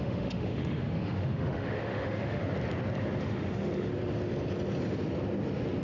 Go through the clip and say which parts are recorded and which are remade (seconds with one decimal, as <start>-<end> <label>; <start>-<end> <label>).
0.0-2.4 remade; 2.4-3.2 recorded; 3.2-3.9 remade; 3.9-5.8 recorded